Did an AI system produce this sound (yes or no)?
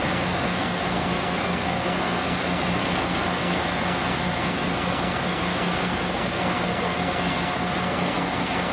yes